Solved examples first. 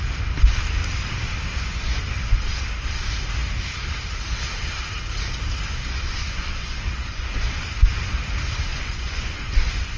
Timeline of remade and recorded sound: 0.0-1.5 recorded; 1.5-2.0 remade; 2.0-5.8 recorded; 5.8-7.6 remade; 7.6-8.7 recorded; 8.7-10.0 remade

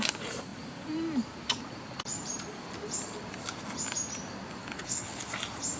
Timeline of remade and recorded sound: 0.0-4.6 recorded; 4.6-5.2 remade; 5.2-5.8 recorded

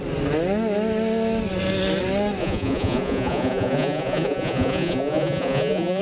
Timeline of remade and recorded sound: 0.0-2.4 recorded; 2.4-6.0 remade